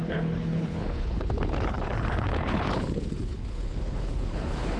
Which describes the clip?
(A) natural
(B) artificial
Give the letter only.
B